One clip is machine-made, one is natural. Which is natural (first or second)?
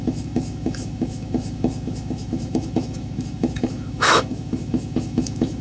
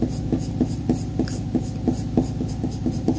second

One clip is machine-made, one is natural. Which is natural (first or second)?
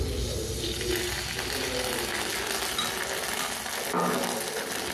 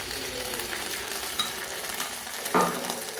first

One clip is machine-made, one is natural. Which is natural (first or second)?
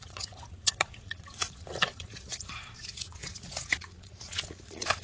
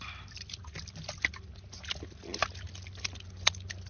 second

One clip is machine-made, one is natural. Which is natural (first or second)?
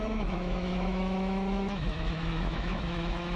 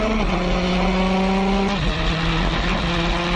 second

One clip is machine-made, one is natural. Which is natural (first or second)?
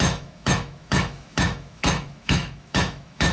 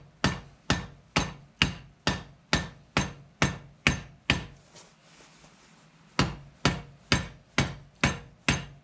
second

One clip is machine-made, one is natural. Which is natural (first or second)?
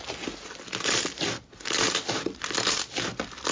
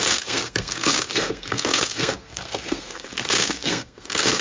first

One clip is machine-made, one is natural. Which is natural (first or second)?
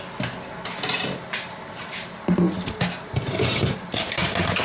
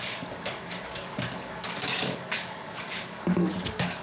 first